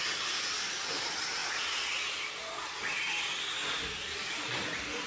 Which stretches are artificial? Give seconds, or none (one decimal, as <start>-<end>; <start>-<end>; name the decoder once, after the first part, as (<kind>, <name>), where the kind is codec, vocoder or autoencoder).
none